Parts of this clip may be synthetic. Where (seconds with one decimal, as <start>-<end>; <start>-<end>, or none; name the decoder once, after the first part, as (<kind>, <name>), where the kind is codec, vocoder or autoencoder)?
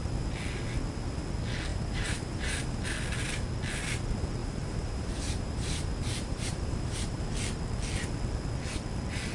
1.7-2.8 (vocoder, BigVGAN v2); 4.4-7.3